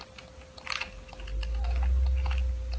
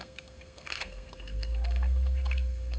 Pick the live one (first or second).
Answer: first